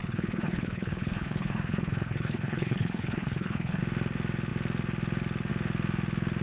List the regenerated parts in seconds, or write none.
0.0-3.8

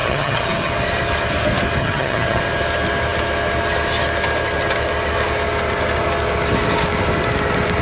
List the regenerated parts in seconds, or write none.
0.0-0.7; 1.8-2.4

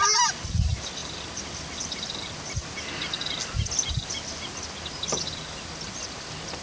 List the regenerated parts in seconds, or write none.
none